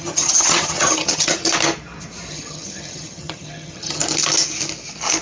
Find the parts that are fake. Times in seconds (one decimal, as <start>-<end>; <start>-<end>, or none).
0.0-1.4; 2.3-4.0